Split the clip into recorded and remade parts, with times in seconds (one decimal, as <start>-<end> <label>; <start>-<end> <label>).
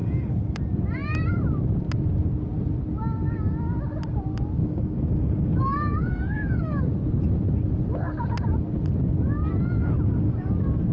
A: 0.0-0.6 remade; 0.6-4.6 recorded; 4.6-6.8 remade; 6.8-9.8 recorded; 9.8-10.5 remade; 10.5-10.9 recorded